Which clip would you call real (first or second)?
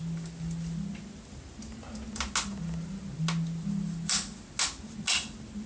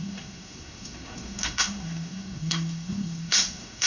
first